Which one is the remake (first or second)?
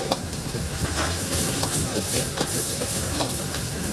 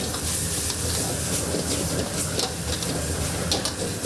first